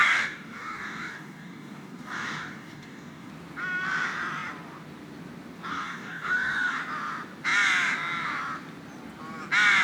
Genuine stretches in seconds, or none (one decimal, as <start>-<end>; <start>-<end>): 3.3-5.7; 6.8-9.8